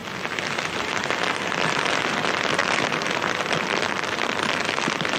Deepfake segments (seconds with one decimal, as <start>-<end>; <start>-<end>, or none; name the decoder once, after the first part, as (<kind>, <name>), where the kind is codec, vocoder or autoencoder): 0.0-1.8 (vocoder, BigVGAN v2); 2.6-4.4